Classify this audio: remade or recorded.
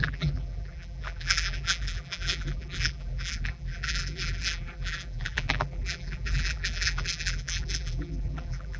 remade